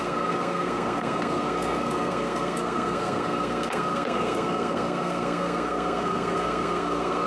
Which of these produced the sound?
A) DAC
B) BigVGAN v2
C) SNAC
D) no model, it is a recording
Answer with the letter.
C